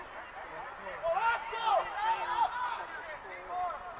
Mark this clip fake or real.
real